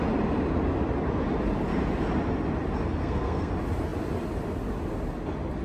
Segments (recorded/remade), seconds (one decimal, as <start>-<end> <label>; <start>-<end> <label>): 0.0-3.0 recorded; 3.0-3.5 remade; 3.5-5.6 recorded